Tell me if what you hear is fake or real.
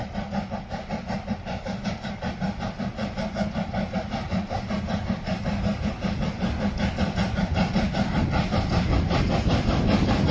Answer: real